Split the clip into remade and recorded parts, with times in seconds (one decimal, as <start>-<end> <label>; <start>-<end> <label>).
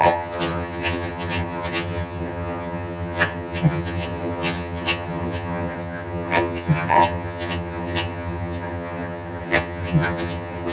0.0-10.7 remade